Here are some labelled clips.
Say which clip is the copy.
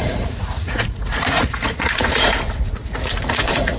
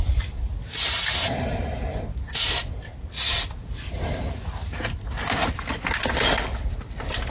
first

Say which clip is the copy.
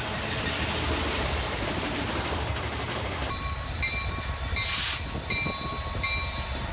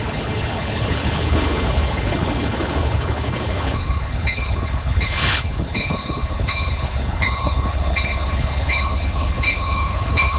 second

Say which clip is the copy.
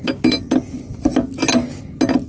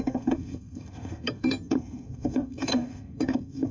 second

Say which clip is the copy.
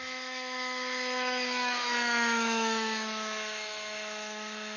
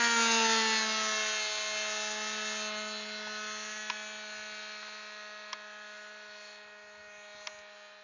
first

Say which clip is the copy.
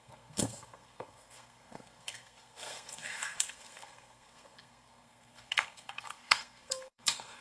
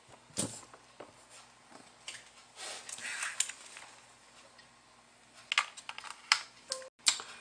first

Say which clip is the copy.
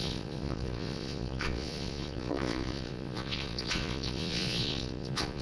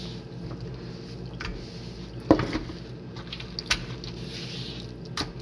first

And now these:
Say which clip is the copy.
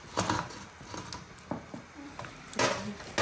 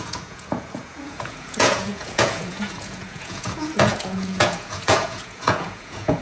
second